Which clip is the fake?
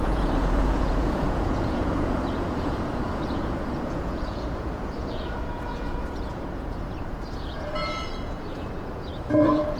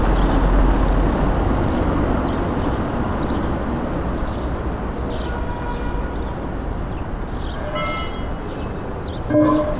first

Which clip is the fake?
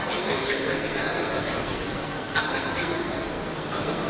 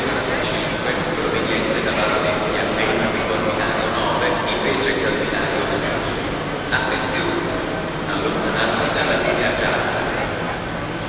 first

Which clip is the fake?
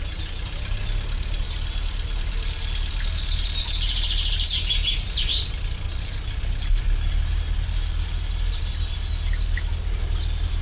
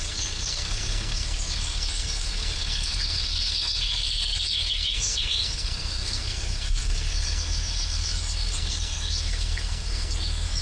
second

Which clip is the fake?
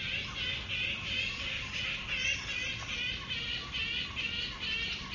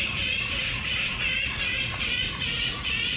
second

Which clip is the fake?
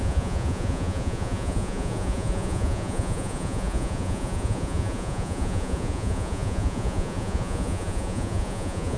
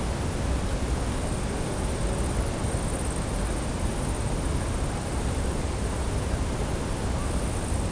first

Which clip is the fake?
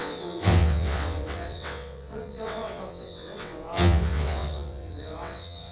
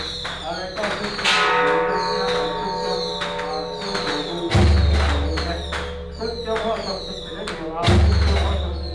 first